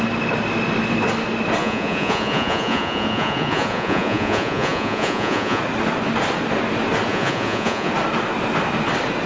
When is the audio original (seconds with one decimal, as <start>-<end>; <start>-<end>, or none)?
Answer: 0.0-1.6; 5.6-7.1; 7.9-9.3